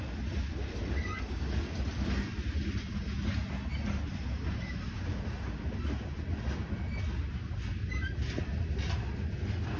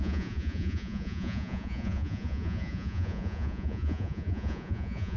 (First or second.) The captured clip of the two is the first